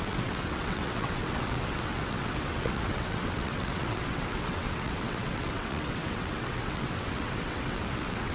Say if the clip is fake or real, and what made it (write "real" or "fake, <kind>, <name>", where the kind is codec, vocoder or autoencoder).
fake, vocoder, WaveNeXt